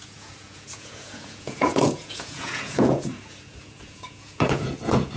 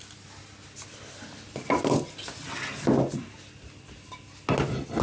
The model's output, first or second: first